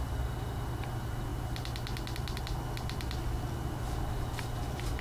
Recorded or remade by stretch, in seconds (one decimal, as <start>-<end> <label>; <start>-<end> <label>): 0.0-5.0 recorded